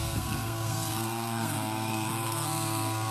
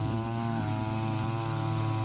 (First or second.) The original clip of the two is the second